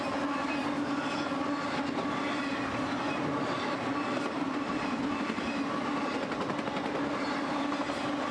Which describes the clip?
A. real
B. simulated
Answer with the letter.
A